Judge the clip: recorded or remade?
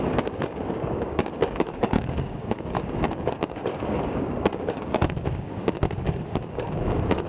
remade